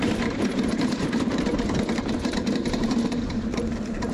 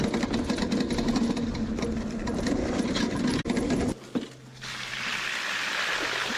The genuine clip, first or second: second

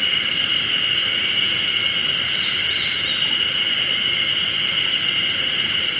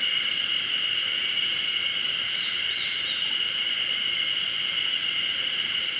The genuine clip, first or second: first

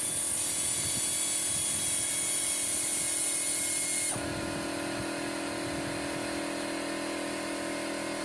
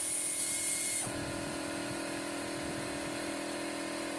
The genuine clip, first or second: first